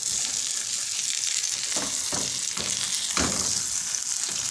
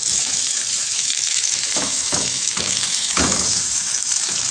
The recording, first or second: first